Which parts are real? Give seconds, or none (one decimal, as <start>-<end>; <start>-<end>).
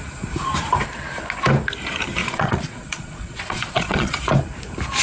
0.0-2.2; 4.3-5.0